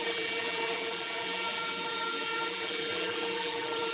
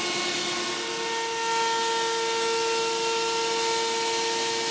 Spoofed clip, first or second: first